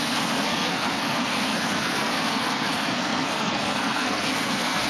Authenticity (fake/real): fake